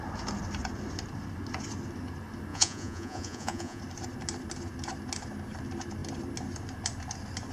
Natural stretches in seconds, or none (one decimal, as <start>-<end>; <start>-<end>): 0.0-2.5; 3.8-7.5